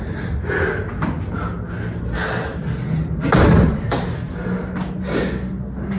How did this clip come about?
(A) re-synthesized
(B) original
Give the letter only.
B